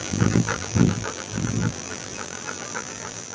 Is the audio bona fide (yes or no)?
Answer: no